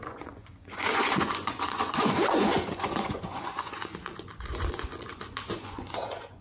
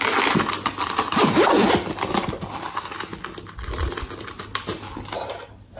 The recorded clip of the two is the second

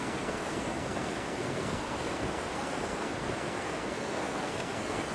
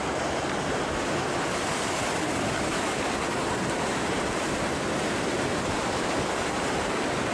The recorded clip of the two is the second